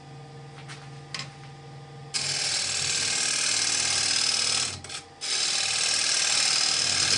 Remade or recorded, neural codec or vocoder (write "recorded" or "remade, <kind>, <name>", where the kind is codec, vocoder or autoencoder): recorded